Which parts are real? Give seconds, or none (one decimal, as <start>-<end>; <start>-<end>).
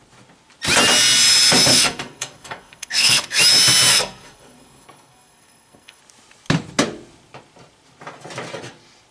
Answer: 0.0-1.7; 3.4-3.9; 6.0-9.1